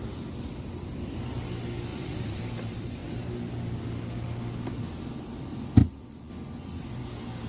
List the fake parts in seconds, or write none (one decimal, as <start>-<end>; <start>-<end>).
1.9-2.4; 5.8-6.3